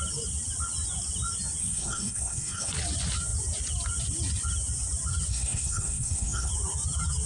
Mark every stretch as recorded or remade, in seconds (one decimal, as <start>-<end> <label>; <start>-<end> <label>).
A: 0.0-1.6 recorded; 1.6-2.7 remade; 2.7-5.3 recorded; 5.3-6.5 remade; 6.5-7.3 recorded